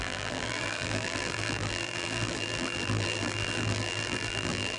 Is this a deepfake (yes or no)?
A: yes